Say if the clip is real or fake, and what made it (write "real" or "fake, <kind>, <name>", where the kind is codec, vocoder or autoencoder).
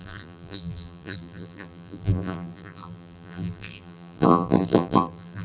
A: fake, vocoder, BigVGAN v2